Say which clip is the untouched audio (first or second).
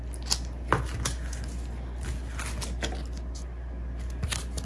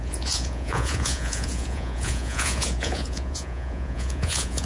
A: first